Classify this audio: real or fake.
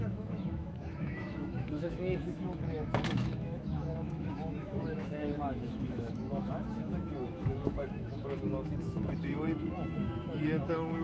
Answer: fake